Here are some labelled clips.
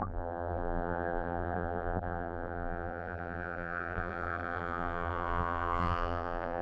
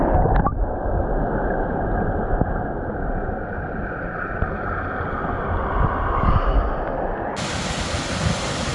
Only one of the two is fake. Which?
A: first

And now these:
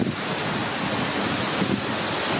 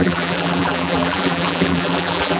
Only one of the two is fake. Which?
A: second